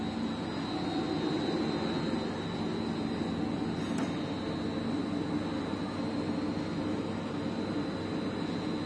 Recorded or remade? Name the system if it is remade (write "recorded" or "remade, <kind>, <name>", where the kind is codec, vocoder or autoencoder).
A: recorded